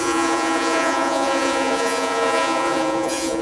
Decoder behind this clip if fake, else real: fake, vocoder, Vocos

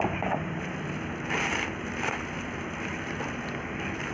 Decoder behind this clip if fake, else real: real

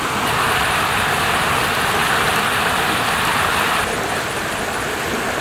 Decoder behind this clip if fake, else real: real